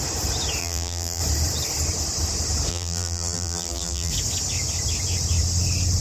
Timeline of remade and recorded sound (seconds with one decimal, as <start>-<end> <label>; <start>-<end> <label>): 0.0-0.6 recorded; 0.6-1.2 remade; 1.2-2.7 recorded; 2.7-4.1 remade; 4.1-6.0 recorded